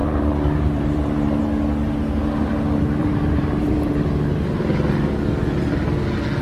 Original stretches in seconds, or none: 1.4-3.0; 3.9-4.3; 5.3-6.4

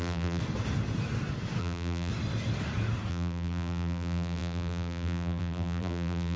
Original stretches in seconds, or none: 0.4-1.6; 2.1-3.1

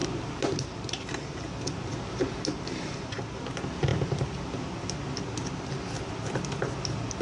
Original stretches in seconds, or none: 3.2-7.2

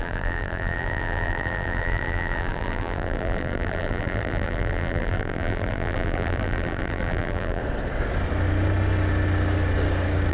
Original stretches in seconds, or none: 7.6-10.3

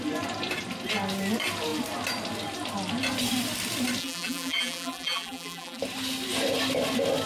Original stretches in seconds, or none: 0.0-4.0; 5.8-7.3

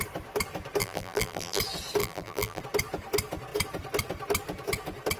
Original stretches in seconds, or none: 0.0-0.8; 1.6-2.0; 2.6-5.2